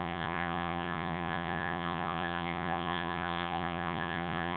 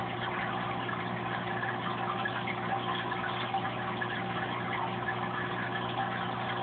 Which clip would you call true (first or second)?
second